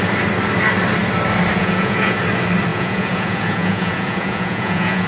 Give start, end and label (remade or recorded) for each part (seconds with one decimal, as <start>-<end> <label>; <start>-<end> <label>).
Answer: 0.0-1.6 recorded; 1.6-2.2 remade; 2.2-2.7 recorded; 2.7-5.1 remade

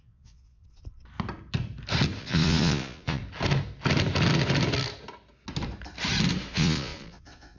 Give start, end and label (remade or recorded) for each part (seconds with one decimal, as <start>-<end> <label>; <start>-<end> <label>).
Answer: 0.0-0.6 remade; 0.6-2.2 recorded; 2.2-3.2 remade; 3.2-6.5 recorded; 6.5-7.6 remade

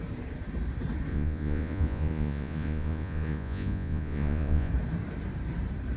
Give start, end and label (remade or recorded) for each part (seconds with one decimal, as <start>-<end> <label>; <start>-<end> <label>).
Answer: 0.0-1.1 recorded; 1.1-4.7 remade; 4.7-6.0 recorded